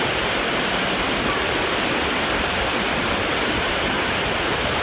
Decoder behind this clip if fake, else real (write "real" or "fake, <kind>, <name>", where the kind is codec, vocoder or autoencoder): real